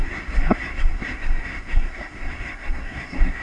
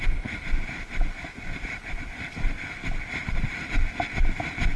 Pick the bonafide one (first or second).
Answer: second